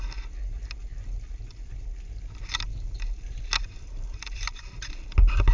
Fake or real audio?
real